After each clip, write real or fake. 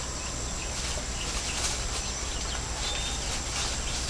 real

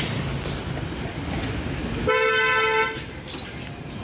real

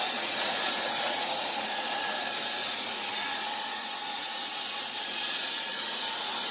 fake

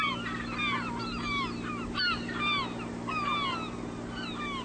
real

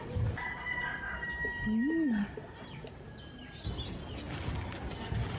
real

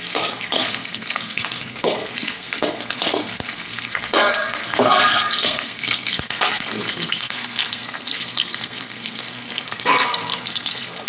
fake